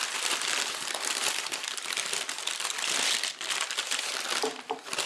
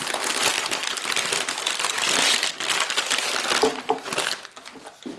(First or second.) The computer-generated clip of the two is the first